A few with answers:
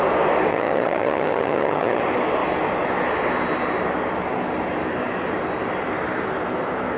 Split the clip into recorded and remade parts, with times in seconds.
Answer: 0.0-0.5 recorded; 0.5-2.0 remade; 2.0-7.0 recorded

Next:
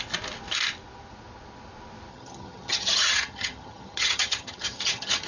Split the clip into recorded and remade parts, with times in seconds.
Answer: 0.0-2.1 recorded; 2.1-5.3 remade

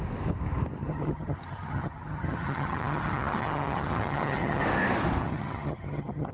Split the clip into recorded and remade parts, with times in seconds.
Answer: 0.0-0.8 recorded; 0.8-4.6 remade; 4.6-5.2 recorded; 5.2-6.3 remade

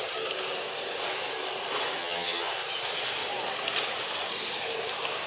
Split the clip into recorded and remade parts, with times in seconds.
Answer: 0.0-2.0 recorded; 2.0-2.5 remade; 2.5-5.3 recorded

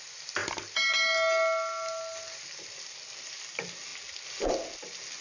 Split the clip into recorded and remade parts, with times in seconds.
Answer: 0.0-5.2 recorded